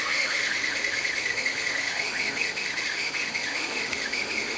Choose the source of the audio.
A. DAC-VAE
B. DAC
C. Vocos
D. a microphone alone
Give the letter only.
A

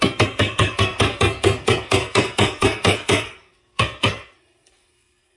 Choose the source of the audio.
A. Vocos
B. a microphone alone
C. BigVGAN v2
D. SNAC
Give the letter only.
D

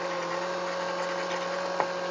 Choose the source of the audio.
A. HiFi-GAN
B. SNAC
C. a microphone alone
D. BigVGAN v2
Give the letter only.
C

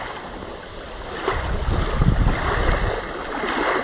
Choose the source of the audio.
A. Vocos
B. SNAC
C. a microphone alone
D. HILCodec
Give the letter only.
C